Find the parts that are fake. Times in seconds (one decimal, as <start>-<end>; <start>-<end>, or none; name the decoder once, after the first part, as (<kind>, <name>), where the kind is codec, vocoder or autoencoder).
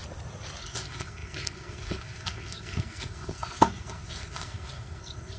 0.6-5.4 (codec, SNAC)